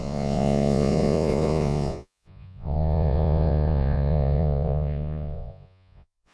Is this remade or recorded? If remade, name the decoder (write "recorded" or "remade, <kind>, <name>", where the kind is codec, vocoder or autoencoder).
remade, vocoder, Vocos